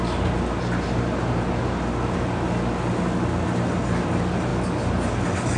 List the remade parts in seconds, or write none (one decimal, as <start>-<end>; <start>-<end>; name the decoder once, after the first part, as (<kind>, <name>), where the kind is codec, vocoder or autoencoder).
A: none